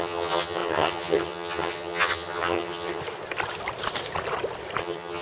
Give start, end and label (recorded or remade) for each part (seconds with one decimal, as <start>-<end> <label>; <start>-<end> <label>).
0.0-3.0 remade; 3.0-4.8 recorded; 4.8-5.2 remade